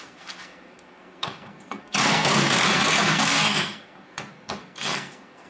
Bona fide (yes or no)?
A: no